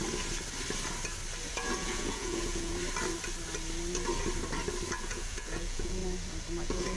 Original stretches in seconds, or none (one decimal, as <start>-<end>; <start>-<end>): 0.0-1.5; 2.7-4.9; 6.0-6.6